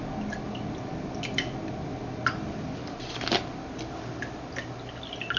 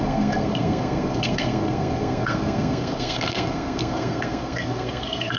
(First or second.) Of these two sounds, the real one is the first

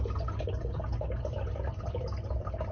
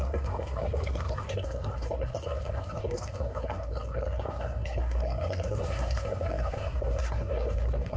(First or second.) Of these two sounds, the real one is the first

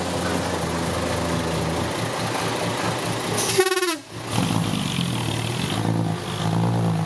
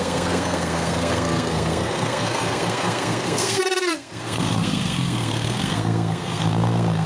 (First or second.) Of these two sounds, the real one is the first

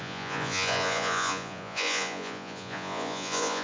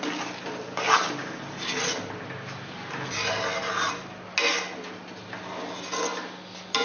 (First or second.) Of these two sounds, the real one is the second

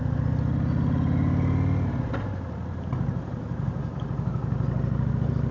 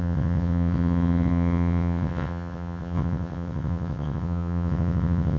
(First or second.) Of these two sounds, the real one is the first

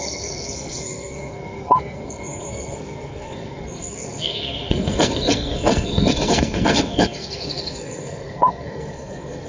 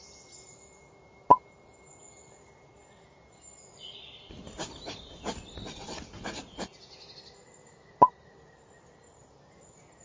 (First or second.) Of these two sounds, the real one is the second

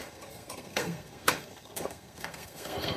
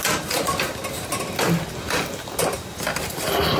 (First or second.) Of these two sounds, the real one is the second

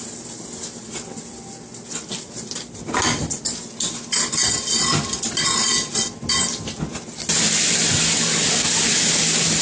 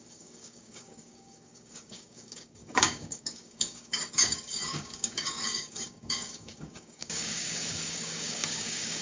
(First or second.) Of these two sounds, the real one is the first